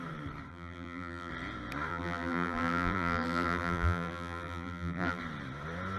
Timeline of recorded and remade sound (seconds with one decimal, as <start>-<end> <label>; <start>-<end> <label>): 0.0-0.5 recorded; 0.5-1.3 remade; 1.3-1.9 recorded; 1.9-5.2 remade; 5.2-6.0 recorded